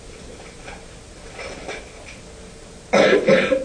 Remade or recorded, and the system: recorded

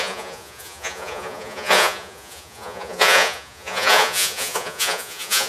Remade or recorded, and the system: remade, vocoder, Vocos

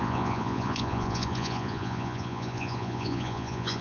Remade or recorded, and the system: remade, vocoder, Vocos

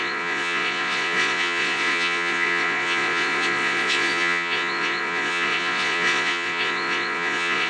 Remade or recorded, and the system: remade, vocoder, Vocos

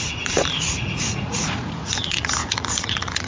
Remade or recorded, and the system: remade, vocoder, Vocos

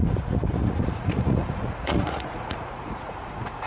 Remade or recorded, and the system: remade, vocoder, Vocos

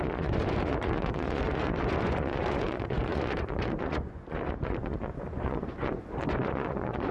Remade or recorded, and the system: remade, vocoder, Vocos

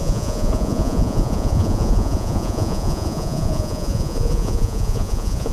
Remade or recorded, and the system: remade, vocoder, Vocos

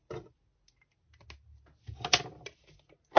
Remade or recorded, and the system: recorded